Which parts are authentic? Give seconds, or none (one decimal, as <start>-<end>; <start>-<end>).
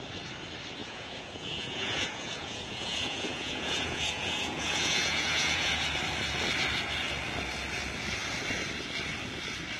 0.0-0.8; 5.9-9.8